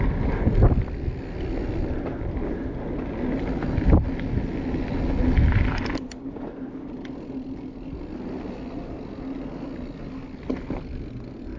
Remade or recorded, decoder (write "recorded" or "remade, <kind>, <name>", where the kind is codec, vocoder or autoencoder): recorded